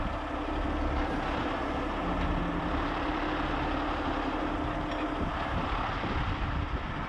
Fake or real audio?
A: real